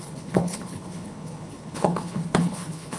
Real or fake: fake